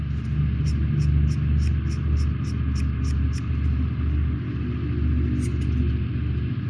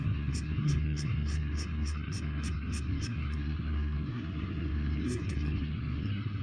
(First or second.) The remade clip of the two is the second